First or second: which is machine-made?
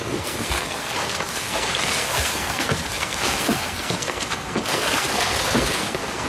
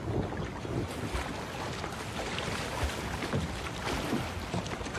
first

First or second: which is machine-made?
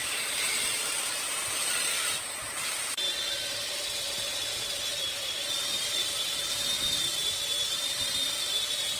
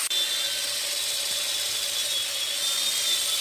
first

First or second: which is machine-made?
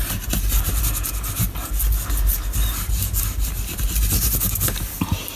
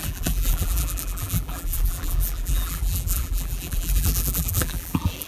second